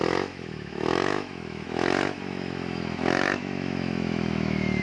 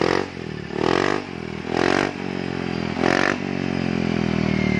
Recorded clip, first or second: second